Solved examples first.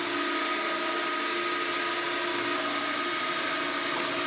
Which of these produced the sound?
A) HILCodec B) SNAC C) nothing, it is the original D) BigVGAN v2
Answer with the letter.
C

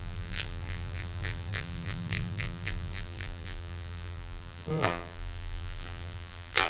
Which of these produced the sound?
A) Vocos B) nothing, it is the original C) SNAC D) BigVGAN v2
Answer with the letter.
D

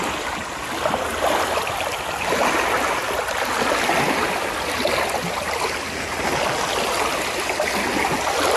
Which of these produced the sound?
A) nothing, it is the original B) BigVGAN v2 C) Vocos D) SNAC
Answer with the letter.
A